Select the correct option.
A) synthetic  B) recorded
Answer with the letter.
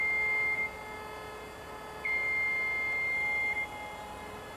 B